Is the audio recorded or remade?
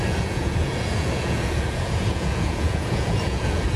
remade